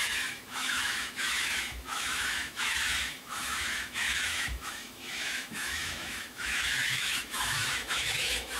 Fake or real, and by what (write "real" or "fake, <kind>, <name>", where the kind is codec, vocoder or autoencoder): fake, autoencoder, DAC-VAE